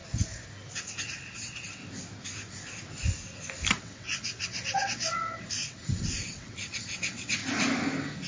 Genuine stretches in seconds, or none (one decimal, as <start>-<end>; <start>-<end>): 0.0-1.0; 1.8-3.7; 7.4-8.3